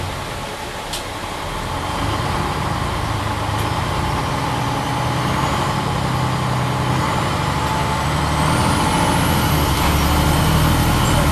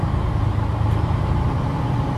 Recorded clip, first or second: first